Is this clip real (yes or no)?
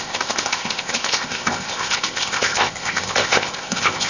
no